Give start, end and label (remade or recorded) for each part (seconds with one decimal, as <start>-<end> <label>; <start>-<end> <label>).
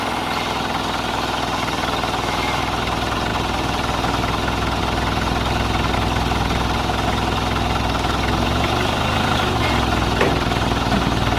0.0-3.3 remade; 3.3-4.8 recorded; 4.8-11.4 remade